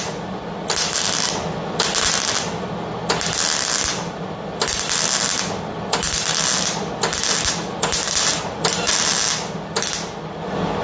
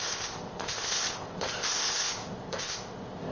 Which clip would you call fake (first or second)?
second